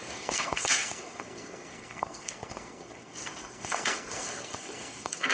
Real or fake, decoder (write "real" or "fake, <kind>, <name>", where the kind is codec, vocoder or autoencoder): fake, codec, SNAC